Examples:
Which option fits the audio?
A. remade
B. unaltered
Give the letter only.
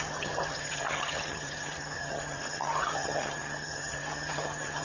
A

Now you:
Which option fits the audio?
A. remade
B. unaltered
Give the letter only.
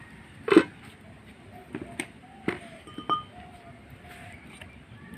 B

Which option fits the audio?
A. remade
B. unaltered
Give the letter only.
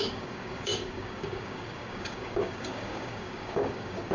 A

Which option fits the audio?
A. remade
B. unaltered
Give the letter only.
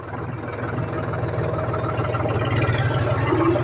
B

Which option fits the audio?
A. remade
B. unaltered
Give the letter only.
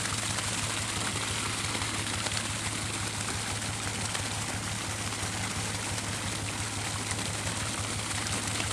B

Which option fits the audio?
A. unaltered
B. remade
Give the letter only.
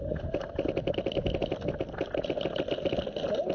A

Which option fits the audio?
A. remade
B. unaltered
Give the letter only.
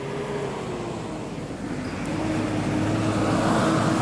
B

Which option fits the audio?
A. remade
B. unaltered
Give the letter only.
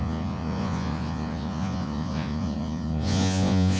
A